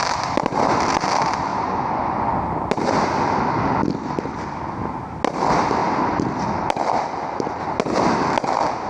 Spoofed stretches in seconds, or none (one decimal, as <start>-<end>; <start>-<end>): 1.5-2.3